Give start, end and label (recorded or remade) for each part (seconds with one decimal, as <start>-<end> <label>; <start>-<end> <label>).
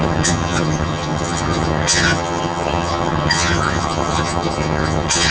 0.0-5.3 remade